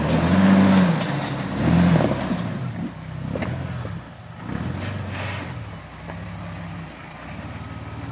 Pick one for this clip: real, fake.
real